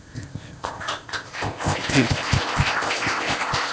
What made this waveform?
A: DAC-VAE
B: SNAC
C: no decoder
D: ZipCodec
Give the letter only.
D